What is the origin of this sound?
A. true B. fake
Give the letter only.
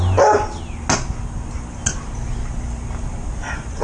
A